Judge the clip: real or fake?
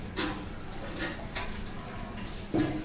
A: real